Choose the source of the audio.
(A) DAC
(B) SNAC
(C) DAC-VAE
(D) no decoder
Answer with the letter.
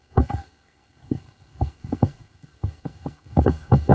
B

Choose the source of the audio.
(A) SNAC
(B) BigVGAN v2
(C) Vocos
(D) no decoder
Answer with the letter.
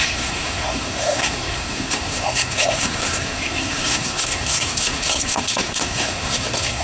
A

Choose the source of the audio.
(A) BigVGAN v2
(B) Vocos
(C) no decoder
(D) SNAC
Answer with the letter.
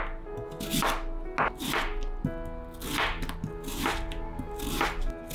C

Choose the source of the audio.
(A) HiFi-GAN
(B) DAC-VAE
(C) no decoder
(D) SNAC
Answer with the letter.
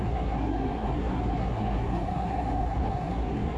D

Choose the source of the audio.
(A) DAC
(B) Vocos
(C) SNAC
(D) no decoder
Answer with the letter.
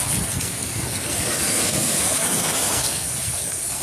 C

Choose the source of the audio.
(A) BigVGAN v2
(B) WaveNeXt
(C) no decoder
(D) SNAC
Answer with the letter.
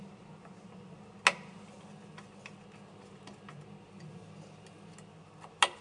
C